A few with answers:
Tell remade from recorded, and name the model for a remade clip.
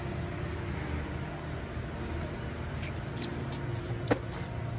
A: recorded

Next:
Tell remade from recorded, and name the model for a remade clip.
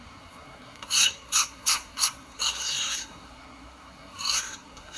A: remade, codec, SNAC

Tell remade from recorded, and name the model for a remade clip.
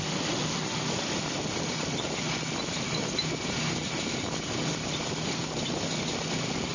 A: recorded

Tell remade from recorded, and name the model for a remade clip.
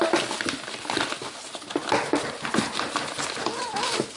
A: recorded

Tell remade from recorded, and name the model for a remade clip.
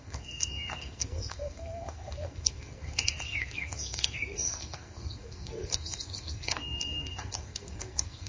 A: remade, codec, SNAC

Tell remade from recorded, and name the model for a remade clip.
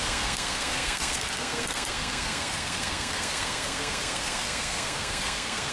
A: remade, codec, SNAC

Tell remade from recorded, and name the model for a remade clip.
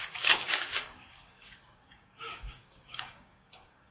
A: remade, codec, DAC